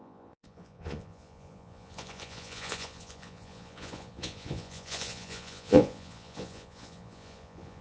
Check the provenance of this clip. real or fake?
fake